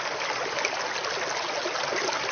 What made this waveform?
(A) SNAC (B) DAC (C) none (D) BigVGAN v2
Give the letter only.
C